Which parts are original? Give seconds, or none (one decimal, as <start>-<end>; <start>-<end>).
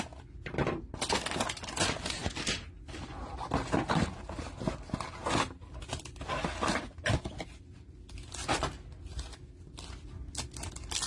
0.0-11.1